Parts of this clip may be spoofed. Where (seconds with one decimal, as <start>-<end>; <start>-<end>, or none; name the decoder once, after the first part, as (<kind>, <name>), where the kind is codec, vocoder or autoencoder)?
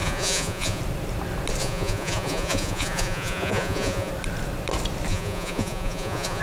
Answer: 0.0-0.8 (vocoder, Vocos); 1.6-4.1; 5.1-6.4